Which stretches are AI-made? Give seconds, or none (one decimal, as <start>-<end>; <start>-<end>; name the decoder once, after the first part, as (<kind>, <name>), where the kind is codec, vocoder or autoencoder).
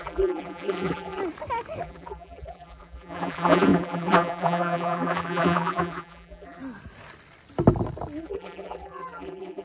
0.0-1.2 (vocoder, BigVGAN v2); 1.8-6.6; 8.2-9.6